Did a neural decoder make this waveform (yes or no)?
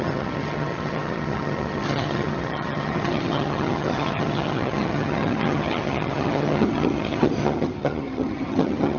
yes